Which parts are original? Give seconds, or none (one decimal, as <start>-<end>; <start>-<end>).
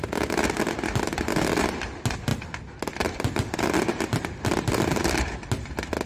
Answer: 0.0-6.1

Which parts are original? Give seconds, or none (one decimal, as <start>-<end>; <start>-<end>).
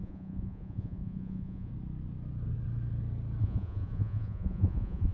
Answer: 1.7-3.4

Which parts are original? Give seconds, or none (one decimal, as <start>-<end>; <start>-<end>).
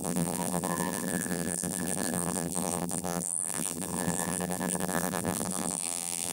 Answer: none